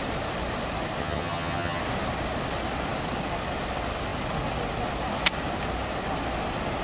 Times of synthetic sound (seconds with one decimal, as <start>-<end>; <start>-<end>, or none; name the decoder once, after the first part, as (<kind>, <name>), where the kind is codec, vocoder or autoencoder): 1.0-1.8 (vocoder, HiFi-GAN)